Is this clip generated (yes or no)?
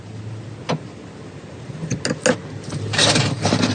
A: no